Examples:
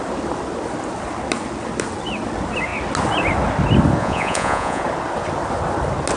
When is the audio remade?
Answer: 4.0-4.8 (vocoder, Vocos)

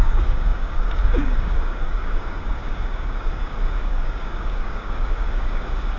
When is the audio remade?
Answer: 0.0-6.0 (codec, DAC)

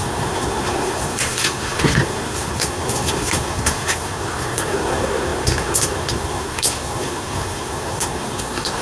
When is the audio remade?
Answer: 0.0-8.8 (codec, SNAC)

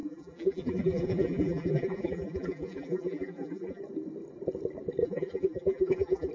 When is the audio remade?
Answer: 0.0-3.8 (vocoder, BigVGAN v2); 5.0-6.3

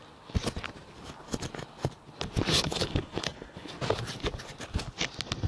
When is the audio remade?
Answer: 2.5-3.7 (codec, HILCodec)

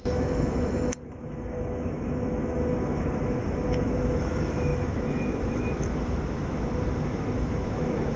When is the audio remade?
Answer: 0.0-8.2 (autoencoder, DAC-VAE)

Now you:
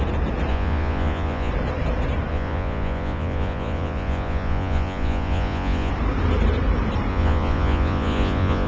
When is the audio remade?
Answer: 0.5-1.5 (vocoder, Vocos); 2.3-5.9; 7.1-8.7

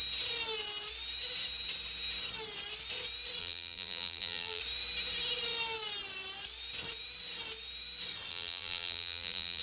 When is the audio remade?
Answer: 3.4-4.6 (vocoder, BigVGAN v2); 8.3-9.6